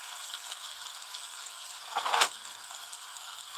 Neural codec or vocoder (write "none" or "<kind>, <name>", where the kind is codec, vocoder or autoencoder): codec, SNAC